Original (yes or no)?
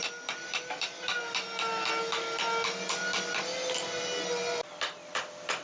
yes